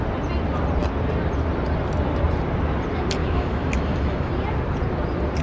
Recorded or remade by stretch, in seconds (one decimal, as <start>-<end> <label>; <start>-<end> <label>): 0.0-3.2 recorded; 3.2-4.3 remade; 4.3-5.4 recorded